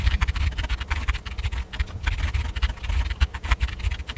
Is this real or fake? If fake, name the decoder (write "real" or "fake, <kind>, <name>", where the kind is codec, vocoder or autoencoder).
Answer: real